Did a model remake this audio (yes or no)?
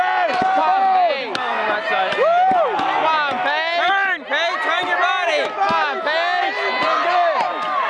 no